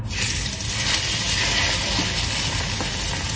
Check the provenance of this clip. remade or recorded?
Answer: recorded